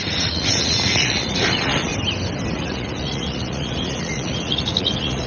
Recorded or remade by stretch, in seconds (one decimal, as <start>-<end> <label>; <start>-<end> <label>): 0.0-1.9 remade; 1.9-2.5 recorded; 2.5-5.3 remade

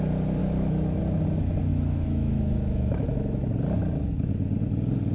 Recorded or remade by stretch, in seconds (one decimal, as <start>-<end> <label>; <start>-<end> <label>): 0.0-0.4 recorded; 0.4-1.0 remade; 1.0-1.7 recorded; 1.7-3.5 remade; 3.5-5.1 recorded

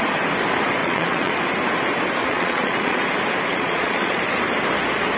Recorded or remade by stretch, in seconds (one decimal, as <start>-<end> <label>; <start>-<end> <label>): 0.0-0.8 recorded; 0.8-1.3 remade; 1.3-2.2 recorded; 2.2-3.0 remade; 3.0-3.5 recorded; 3.5-4.2 remade; 4.2-5.2 recorded

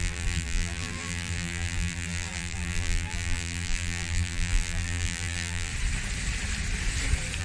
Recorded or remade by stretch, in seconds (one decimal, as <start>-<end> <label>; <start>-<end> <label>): 0.0-5.7 remade; 5.7-7.4 recorded

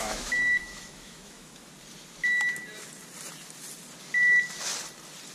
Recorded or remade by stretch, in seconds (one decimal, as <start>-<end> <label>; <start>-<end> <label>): 0.0-1.7 remade; 1.7-5.3 recorded

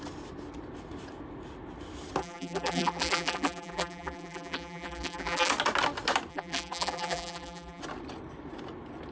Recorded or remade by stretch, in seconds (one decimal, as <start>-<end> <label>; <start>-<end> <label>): 0.0-2.2 recorded; 2.2-5.5 remade; 5.5-6.3 recorded; 6.3-7.8 remade; 7.8-9.1 recorded

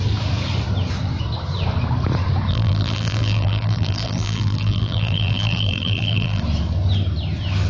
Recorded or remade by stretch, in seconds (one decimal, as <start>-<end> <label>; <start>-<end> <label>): 0.0-2.5 recorded; 2.5-6.4 remade; 6.4-7.7 recorded